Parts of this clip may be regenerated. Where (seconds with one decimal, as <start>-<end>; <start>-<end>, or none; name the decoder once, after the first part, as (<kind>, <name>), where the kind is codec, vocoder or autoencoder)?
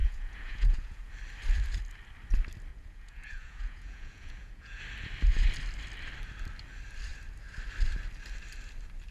0.0-1.1 (vocoder, Vocos); 2.7-4.8